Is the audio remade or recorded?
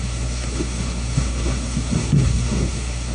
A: remade